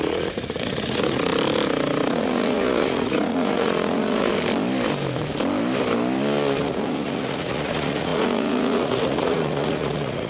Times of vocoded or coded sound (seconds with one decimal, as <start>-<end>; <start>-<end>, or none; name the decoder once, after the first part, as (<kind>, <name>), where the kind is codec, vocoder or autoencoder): 0.0-1.3 (vocoder, Vocos); 2.1-4.3; 6.6-10.3